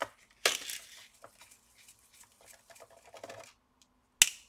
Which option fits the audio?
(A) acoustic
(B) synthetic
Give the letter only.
A